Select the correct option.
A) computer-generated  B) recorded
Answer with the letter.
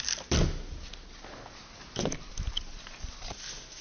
B